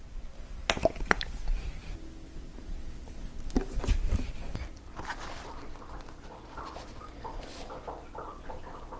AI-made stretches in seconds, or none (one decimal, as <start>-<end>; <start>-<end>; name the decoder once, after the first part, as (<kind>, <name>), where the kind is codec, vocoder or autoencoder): none